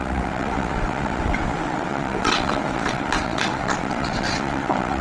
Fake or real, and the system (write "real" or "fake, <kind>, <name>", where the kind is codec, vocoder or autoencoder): fake, vocoder, WaveNeXt